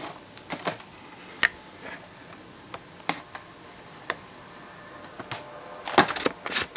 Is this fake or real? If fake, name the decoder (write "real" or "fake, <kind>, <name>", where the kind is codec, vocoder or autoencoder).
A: real